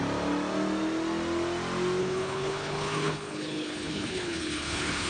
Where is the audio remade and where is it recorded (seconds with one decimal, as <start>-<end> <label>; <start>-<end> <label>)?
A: 0.0-2.0 recorded; 2.0-5.1 remade